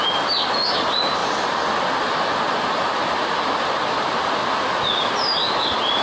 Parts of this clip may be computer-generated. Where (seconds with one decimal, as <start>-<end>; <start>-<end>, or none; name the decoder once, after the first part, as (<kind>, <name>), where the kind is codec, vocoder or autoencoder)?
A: none

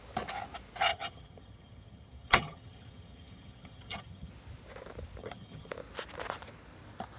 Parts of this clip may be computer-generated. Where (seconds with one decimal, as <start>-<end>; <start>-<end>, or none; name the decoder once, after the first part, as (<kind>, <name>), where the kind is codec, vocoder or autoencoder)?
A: 0.9-4.3 (vocoder, HiFi-GAN); 5.2-5.7

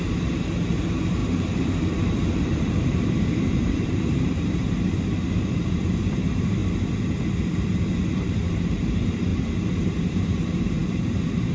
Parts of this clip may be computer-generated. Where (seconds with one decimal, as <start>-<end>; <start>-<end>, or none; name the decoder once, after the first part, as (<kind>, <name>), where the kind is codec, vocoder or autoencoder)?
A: 0.0-6.6 (vocoder, BigVGAN v2); 7.4-11.5

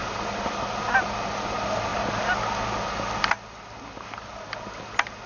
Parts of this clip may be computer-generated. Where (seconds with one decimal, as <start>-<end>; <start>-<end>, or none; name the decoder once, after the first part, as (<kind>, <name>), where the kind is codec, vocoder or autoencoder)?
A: none

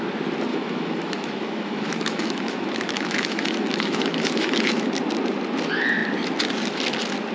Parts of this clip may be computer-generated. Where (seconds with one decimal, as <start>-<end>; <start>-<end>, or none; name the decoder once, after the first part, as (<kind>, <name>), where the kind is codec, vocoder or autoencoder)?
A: 0.5-4.9 (autoencoder, DAC-VAE)

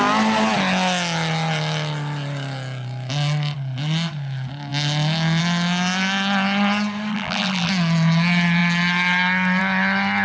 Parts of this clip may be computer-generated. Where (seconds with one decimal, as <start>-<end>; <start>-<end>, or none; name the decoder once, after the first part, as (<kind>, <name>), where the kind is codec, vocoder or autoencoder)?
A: 7.1-7.7 (vocoder, BigVGAN v2)

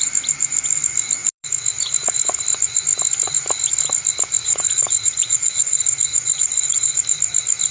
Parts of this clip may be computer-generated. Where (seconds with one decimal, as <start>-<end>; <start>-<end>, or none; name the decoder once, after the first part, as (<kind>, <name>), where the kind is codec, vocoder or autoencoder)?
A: 4.4-7.0 (vocoder, Vocos)

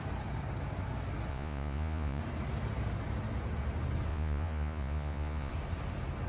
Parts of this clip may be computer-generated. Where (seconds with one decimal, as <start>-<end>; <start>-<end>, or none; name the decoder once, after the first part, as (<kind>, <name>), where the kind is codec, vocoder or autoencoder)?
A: 1.3-2.2 (vocoder, Vocos); 4.1-5.5